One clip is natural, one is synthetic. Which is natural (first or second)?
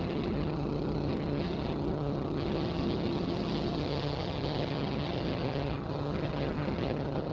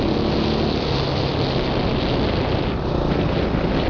second